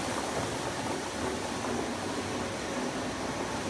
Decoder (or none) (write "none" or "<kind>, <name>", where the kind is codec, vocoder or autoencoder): none